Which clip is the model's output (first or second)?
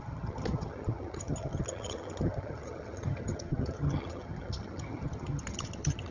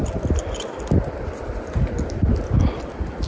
first